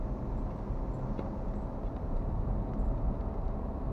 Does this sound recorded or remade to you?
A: recorded